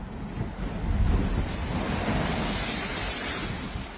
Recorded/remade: recorded